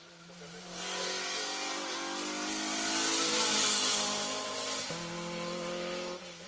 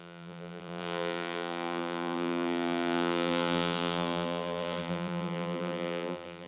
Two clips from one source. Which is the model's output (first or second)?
second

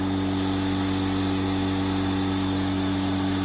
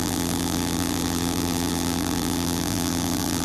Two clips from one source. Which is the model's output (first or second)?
second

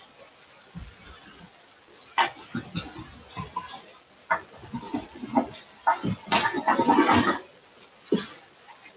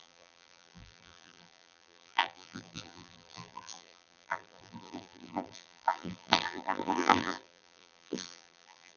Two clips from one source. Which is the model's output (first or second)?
second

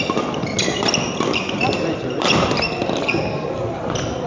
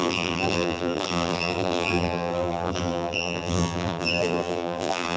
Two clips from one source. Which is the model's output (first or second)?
second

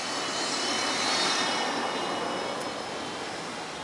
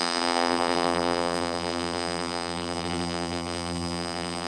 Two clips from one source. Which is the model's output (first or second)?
second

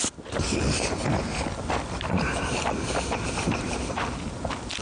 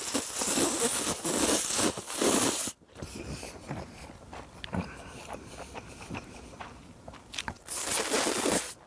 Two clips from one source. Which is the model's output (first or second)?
second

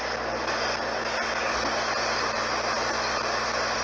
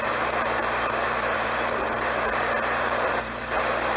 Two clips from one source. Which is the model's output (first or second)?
second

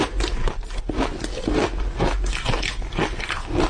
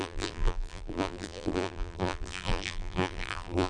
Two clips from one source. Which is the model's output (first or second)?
second